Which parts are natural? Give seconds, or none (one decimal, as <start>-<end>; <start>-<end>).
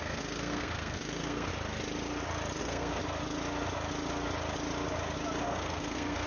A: 1.5-2.6; 3.0-5.4